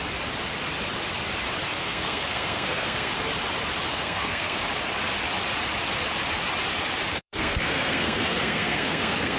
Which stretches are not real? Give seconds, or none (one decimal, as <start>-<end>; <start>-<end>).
1.7-3.1; 3.9-4.6; 7.1-9.4